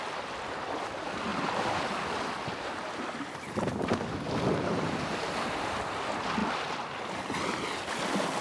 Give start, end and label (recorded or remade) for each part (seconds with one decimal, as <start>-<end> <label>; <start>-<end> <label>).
0.0-1.3 recorded; 1.3-5.6 remade; 5.6-8.4 recorded

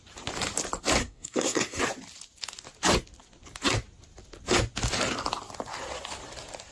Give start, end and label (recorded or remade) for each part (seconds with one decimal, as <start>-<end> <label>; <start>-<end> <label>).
0.0-1.0 recorded; 1.0-1.8 remade; 1.8-6.7 recorded

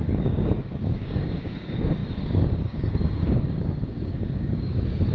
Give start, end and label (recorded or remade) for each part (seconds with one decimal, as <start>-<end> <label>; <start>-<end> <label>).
0.0-5.1 remade

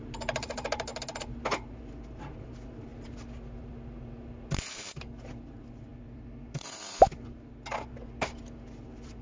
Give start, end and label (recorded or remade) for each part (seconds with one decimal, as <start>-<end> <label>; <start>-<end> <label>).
0.0-9.2 recorded

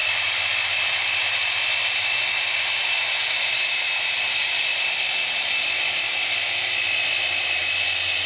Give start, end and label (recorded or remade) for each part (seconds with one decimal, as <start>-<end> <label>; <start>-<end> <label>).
0.0-8.3 recorded

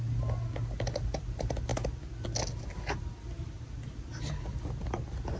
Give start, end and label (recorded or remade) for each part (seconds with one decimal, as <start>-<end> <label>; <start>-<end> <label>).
0.0-5.4 recorded

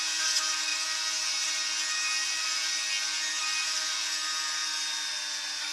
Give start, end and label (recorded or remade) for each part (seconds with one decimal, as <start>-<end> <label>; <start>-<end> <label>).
0.0-5.7 recorded